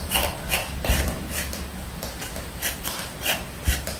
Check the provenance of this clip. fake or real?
fake